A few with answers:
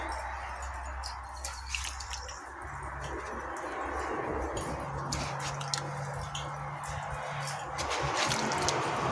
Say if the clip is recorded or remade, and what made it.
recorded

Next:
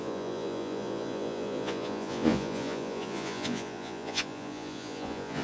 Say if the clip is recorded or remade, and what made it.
remade, vocoder, Vocos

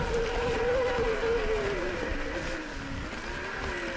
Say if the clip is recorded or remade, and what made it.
recorded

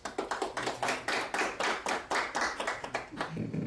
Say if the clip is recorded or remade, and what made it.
recorded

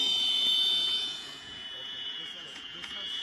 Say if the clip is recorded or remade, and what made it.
remade, vocoder, Vocos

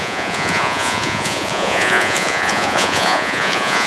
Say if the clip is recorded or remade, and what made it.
remade, vocoder, Vocos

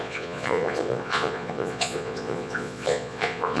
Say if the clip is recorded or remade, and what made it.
remade, vocoder, Vocos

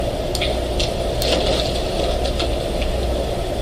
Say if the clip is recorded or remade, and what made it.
recorded